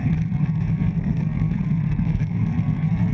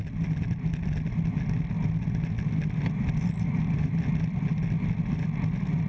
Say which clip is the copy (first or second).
first